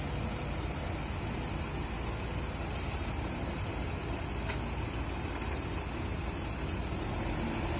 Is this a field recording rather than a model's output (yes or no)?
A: yes